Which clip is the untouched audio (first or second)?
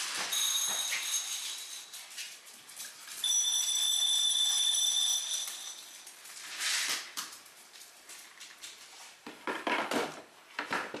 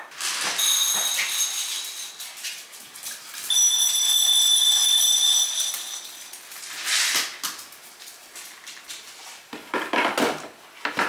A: second